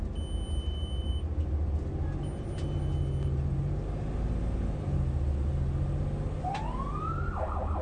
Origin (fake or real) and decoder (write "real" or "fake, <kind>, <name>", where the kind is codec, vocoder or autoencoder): real